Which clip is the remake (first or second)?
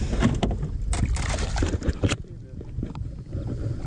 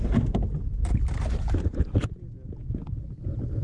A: first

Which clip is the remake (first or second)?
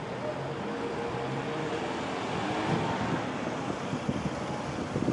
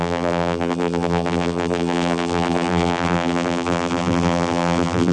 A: second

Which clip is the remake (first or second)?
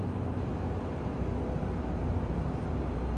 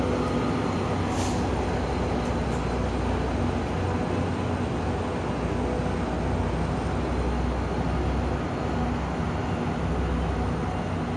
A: first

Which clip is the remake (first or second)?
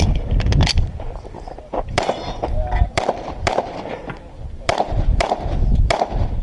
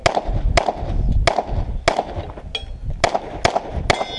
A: first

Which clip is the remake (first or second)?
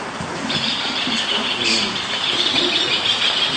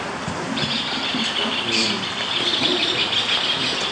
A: first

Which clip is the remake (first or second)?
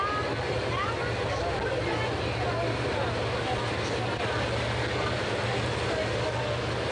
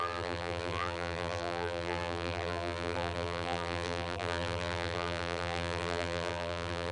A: second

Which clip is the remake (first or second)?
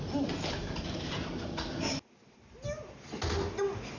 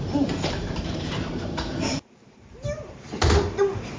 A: second